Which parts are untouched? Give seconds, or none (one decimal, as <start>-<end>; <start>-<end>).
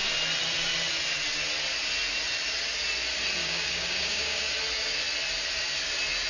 0.0-3.4; 4.5-6.3